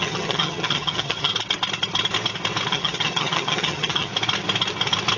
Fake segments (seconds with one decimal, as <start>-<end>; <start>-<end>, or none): 0.0-1.3; 2.7-4.1